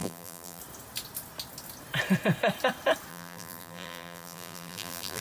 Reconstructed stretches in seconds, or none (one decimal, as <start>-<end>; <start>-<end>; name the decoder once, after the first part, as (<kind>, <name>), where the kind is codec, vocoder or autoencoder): 0.0-0.6 (vocoder, BigVGAN v2); 3.1-5.2